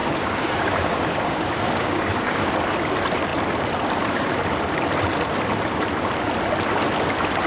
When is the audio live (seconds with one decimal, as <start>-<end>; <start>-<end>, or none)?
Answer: 2.5-7.5